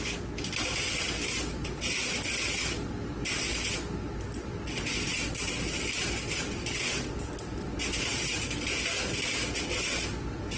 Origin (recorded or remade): recorded